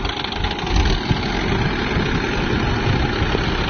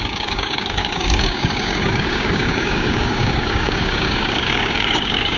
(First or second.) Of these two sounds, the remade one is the second